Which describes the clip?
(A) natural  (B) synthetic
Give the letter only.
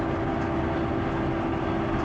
A